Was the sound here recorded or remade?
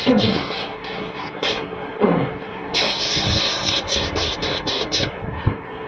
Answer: remade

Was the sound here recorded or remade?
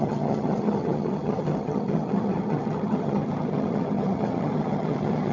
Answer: remade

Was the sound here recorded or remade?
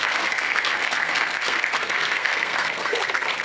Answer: remade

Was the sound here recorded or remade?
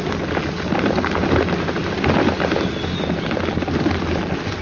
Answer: recorded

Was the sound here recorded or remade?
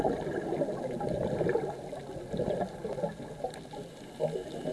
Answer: recorded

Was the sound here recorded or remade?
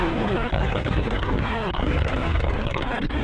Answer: remade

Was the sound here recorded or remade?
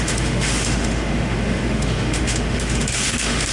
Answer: remade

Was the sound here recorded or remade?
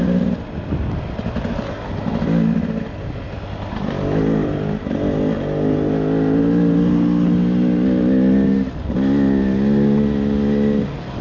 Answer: recorded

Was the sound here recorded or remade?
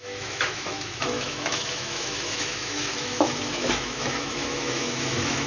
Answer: remade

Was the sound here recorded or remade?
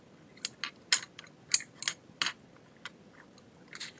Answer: recorded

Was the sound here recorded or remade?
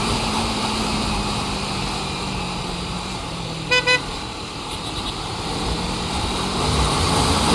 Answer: remade